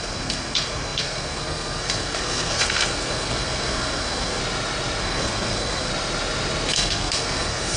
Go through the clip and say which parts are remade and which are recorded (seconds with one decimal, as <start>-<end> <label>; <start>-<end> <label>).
0.0-4.4 remade; 4.4-5.0 recorded; 5.0-5.9 remade; 5.9-6.7 recorded; 6.7-7.8 remade